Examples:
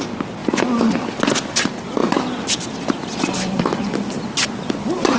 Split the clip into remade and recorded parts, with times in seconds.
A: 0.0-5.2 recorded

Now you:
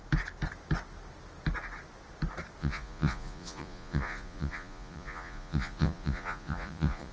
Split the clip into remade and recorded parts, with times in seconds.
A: 0.0-2.6 recorded; 2.6-7.1 remade